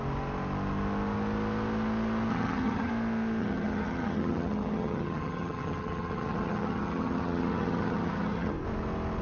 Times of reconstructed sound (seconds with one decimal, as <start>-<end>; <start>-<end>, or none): 2.3-2.9; 3.4-8.5